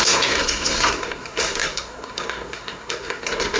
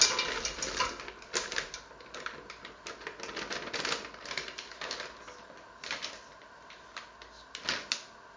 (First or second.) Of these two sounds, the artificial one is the first